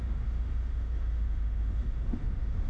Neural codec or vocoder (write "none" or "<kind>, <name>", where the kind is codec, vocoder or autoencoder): autoencoder, DAC-VAE